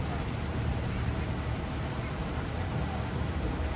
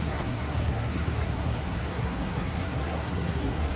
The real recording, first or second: first